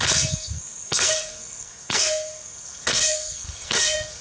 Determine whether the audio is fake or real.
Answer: fake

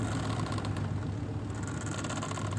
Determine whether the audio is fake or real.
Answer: real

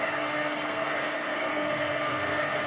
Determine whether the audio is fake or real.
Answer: fake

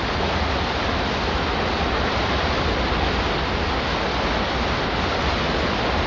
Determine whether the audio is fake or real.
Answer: real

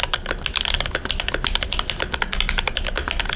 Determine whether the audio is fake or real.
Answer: real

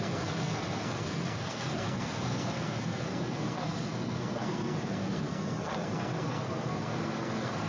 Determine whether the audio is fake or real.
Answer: fake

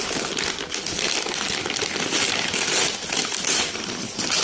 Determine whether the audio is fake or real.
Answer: real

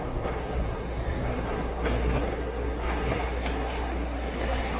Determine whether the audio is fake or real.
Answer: fake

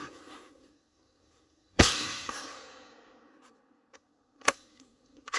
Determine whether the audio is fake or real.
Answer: fake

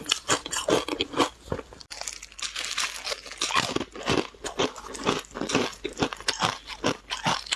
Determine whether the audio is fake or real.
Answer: real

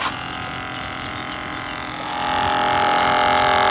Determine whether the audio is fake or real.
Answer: real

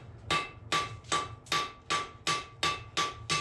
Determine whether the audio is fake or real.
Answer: real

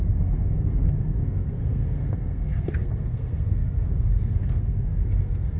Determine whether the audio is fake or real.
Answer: fake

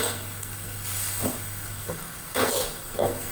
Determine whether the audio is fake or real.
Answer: fake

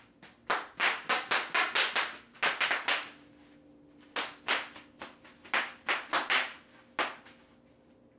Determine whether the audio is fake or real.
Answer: real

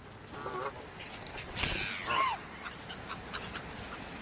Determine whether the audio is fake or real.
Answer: real